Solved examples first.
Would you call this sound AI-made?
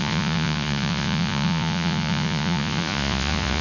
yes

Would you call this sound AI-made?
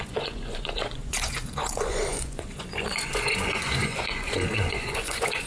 yes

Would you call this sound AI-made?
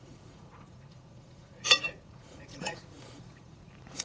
yes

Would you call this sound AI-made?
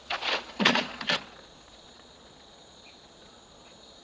yes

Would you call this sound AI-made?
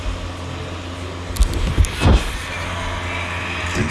no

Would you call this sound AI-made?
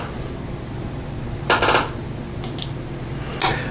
no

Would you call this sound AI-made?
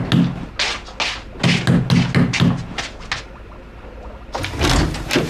no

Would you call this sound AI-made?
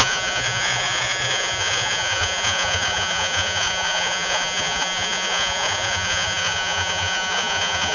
yes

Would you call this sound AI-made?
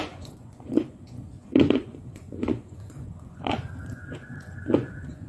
yes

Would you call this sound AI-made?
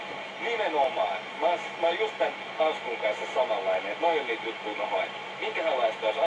no